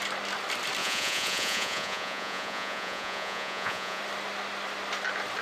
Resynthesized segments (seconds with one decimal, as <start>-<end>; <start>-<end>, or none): 0.8-4.0